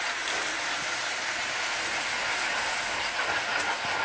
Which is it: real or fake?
fake